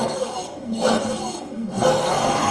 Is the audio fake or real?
fake